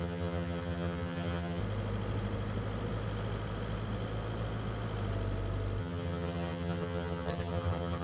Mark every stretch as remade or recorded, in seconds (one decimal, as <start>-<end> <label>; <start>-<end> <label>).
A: 0.0-1.6 remade; 1.6-5.8 recorded; 5.8-8.0 remade